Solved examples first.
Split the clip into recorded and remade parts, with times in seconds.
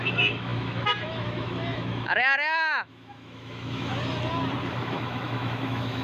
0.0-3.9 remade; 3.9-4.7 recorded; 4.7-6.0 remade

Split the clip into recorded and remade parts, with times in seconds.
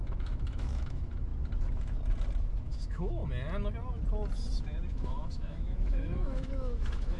0.0-1.3 remade; 1.3-2.6 recorded; 2.6-3.2 remade; 3.2-4.9 recorded; 4.9-7.2 remade